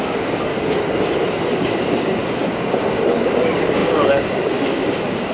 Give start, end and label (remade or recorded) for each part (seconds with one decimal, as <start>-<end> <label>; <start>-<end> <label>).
0.0-0.5 remade; 0.5-1.5 recorded; 1.5-2.2 remade; 2.2-3.1 recorded; 3.1-5.3 remade

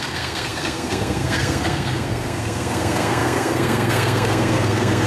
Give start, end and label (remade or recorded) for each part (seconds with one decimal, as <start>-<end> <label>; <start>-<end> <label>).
0.0-5.1 remade

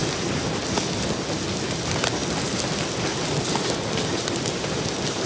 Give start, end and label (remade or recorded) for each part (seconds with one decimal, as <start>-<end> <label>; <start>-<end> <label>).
0.0-5.3 recorded

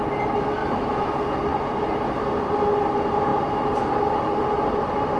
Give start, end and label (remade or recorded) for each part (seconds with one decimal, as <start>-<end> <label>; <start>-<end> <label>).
0.0-0.6 recorded; 0.6-1.1 remade; 1.1-5.2 recorded

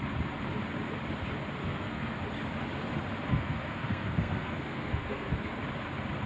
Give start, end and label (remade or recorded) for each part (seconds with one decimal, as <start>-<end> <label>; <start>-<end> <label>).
0.0-1.6 recorded; 1.6-2.2 remade; 2.2-3.3 recorded; 3.3-5.6 remade; 5.6-6.3 recorded